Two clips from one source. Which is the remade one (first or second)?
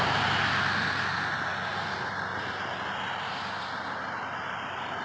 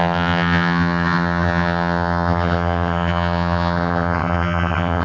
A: second